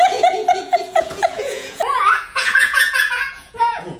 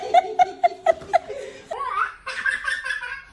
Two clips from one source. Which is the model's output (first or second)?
first